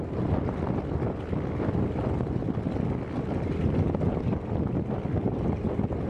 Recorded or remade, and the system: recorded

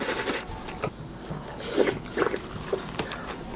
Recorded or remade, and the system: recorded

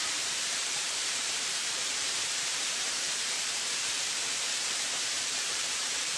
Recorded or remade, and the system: remade, vocoder, BigVGAN v2